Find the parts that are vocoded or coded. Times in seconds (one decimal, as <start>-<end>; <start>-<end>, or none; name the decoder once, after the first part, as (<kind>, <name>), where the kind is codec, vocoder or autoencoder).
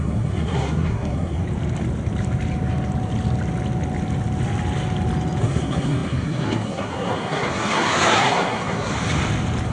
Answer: 0.0-1.4 (codec, SNAC); 5.4-8.9